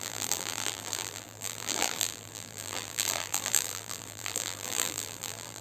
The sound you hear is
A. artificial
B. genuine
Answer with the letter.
A